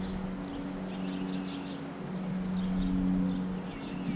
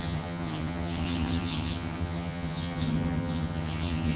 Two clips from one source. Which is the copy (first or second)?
second